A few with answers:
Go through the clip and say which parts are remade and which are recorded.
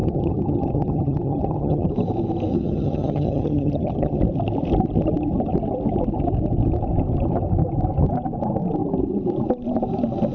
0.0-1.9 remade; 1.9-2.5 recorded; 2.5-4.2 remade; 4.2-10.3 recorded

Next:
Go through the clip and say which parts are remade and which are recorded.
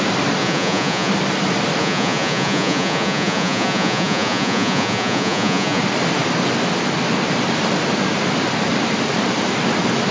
0.0-0.4 recorded; 0.4-1.1 remade; 1.1-1.8 recorded; 1.8-5.8 remade; 5.8-10.1 recorded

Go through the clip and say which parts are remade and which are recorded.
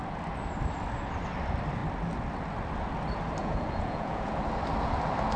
0.0-3.4 recorded; 3.4-4.3 remade; 4.3-5.4 recorded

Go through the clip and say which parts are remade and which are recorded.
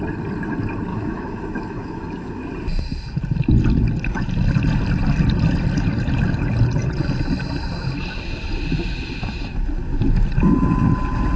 0.0-0.9 recorded; 0.9-2.4 remade; 2.4-11.4 recorded